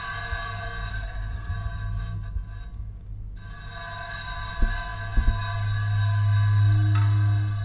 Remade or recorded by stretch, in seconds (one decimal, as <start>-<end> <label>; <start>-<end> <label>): 0.0-0.9 recorded; 0.9-1.5 remade; 1.5-7.6 recorded